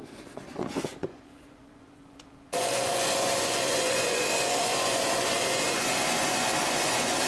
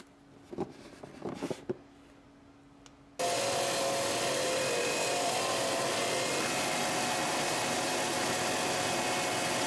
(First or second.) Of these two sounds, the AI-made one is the first